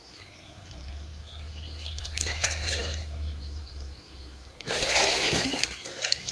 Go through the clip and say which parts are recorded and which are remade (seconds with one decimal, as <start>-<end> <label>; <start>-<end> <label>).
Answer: 0.0-6.3 remade